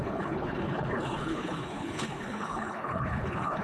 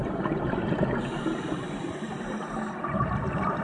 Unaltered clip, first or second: second